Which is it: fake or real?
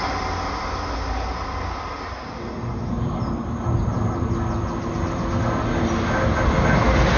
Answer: real